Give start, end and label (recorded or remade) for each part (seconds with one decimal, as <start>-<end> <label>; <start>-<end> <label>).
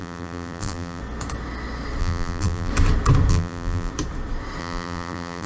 0.0-1.0 remade; 1.0-2.0 recorded; 2.0-2.7 remade; 2.7-3.3 recorded; 3.3-3.9 remade; 3.9-4.6 recorded; 4.6-5.5 remade